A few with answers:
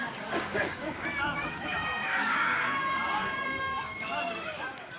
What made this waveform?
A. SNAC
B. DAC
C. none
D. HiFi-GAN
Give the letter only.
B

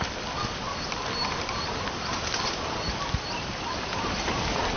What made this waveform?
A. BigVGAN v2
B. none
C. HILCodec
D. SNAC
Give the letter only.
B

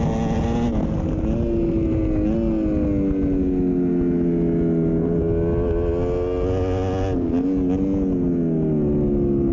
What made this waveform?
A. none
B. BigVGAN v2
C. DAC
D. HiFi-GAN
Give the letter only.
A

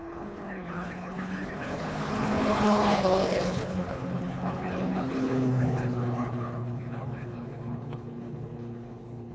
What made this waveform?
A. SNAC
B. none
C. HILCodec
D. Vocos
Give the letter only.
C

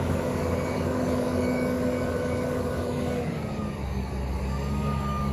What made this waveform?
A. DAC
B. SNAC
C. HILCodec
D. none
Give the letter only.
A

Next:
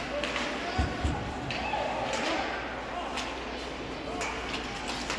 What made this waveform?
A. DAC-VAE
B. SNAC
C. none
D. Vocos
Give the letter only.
C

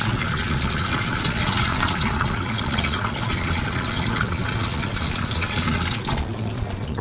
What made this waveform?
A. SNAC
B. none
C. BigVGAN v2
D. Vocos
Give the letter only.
D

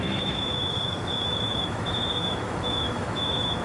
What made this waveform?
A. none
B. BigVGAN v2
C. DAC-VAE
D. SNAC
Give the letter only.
C